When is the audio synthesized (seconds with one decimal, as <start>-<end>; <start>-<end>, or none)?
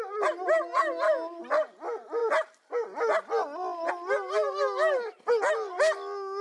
none